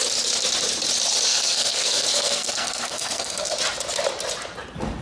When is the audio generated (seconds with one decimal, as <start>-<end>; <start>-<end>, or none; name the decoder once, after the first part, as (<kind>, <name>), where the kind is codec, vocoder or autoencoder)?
1.3-3.5 (codec, SNAC)